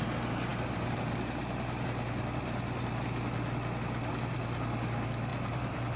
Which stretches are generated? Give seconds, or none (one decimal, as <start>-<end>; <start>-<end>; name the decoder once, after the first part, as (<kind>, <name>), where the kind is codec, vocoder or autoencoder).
5.3-6.0 (vocoder, BigVGAN v2)